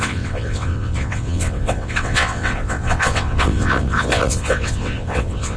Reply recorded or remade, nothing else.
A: remade